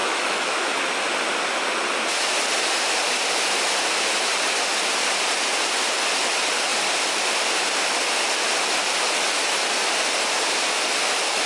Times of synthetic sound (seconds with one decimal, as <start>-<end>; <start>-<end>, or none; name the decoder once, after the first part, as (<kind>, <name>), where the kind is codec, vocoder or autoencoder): 0.0-0.8 (autoencoder, DAC-VAE)